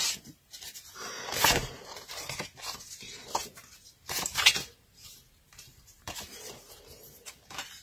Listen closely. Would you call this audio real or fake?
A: fake